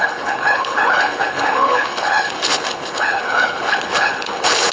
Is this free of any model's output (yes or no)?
no